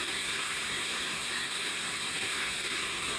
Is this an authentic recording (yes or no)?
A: no